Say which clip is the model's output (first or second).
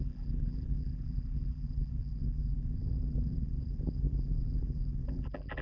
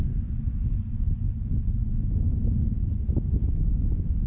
first